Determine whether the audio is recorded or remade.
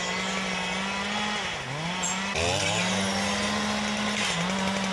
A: recorded